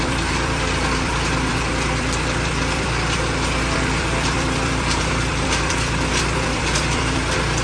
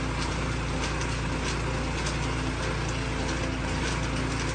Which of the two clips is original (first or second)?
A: second